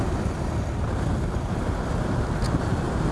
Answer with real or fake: real